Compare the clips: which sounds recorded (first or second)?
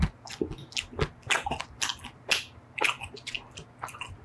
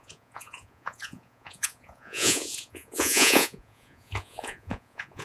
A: first